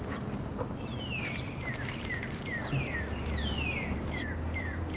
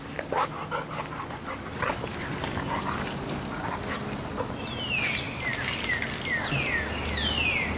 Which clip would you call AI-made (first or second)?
first